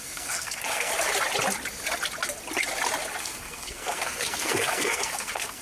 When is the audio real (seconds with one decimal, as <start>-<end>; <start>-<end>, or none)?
0.9-3.2